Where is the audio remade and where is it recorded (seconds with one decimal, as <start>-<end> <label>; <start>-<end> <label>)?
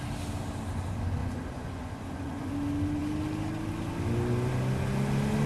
0.0-1.2 recorded; 1.2-2.5 remade; 2.5-5.5 recorded